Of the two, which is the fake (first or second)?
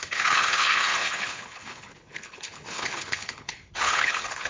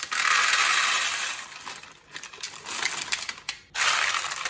first